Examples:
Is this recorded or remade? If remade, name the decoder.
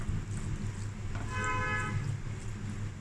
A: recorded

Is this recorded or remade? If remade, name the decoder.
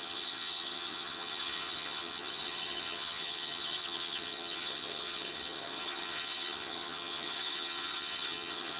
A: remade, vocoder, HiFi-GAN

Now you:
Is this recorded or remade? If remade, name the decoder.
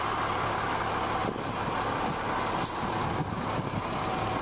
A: recorded